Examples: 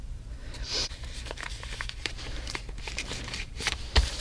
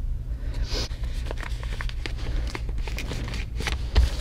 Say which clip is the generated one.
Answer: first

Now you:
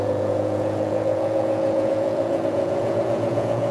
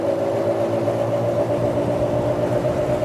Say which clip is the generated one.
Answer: first